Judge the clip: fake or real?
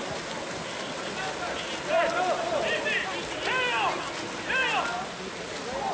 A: real